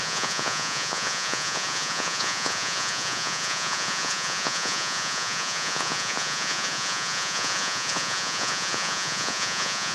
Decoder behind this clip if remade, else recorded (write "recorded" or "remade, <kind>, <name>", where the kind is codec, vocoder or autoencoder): remade, vocoder, Vocos